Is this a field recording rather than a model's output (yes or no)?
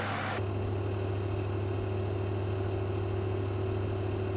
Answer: yes